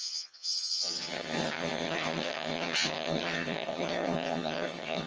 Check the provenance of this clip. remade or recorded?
remade